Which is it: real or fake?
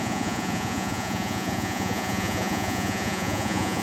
fake